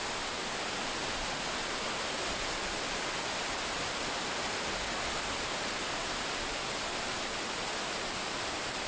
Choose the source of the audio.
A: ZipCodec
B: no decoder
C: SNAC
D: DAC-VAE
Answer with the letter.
B